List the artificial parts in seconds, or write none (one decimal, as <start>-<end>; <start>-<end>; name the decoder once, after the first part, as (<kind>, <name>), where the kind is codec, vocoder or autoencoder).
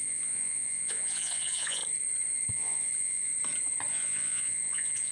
0.0-1.8 (vocoder, Vocos); 2.5-3.3; 3.9-5.1